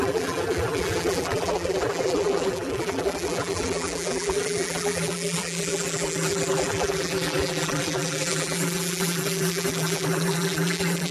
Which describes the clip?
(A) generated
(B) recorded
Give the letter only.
A